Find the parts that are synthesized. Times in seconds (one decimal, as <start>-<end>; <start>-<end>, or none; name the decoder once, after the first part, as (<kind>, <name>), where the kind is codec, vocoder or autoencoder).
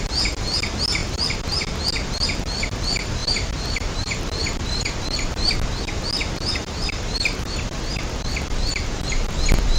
1.0-1.6 (vocoder, BigVGAN v2); 3.2-5.5; 6.6-9.2